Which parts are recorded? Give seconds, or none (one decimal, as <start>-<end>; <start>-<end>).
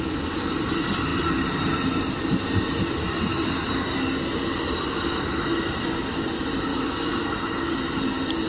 0.0-6.7; 7.7-8.5